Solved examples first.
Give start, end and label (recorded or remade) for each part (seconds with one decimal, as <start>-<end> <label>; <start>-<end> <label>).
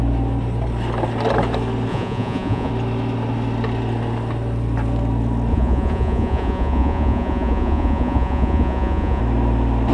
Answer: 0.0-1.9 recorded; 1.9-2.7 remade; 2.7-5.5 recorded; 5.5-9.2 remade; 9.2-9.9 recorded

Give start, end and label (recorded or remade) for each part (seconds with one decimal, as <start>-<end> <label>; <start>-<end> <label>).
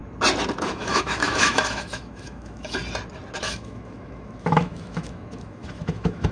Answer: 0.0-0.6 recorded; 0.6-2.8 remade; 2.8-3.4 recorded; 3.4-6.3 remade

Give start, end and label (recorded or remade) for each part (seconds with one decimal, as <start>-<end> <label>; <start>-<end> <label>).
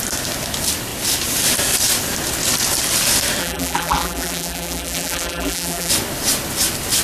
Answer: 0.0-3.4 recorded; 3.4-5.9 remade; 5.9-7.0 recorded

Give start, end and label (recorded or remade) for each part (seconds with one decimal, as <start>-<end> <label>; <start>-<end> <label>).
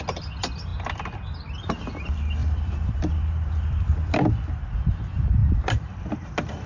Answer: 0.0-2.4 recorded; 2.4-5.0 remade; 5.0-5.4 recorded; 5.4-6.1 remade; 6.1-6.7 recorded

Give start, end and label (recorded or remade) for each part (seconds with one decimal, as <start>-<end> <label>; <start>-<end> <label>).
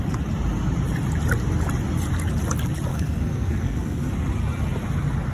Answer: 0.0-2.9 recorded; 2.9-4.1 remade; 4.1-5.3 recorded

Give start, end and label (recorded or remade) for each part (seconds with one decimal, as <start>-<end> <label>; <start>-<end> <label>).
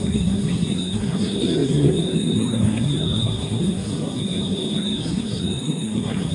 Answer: 0.0-6.3 remade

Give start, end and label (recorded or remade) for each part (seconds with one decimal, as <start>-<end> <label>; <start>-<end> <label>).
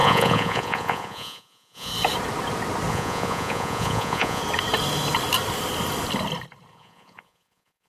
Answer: 0.0-1.9 remade; 1.9-2.9 recorded; 2.9-4.4 remade; 4.4-6.7 recorded; 6.7-7.9 remade